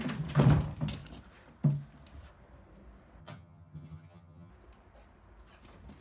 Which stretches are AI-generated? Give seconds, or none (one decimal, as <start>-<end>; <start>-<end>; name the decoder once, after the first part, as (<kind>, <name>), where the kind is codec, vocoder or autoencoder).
3.2-4.5 (vocoder, HiFi-GAN)